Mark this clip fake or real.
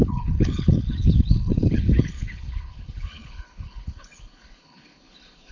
fake